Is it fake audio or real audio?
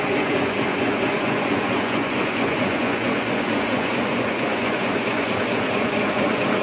fake